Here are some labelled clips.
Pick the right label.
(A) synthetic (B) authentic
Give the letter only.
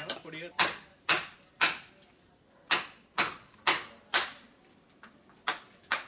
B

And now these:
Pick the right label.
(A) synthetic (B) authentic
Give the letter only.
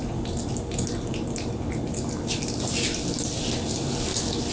B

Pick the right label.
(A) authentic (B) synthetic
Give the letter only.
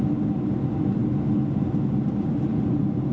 A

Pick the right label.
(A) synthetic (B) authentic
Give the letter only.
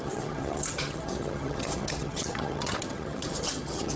A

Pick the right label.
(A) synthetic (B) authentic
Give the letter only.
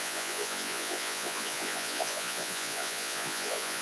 A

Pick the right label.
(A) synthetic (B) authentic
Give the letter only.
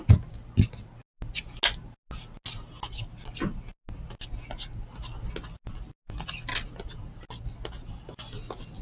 B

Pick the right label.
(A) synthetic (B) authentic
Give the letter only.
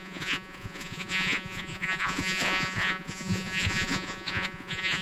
A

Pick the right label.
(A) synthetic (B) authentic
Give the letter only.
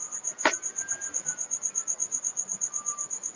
B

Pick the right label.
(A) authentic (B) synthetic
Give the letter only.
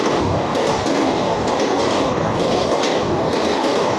B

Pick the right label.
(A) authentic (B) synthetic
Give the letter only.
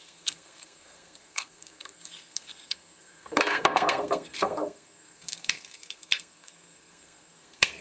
B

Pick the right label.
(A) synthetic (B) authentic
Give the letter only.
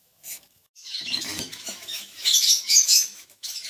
A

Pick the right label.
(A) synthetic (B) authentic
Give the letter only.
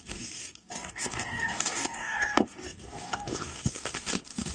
A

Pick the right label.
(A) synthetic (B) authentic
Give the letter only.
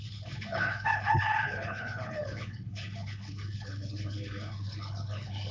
A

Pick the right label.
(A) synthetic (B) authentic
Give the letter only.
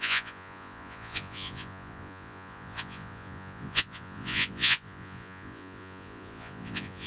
A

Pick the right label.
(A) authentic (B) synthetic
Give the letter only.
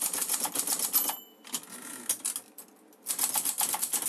A